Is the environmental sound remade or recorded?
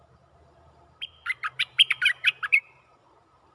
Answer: remade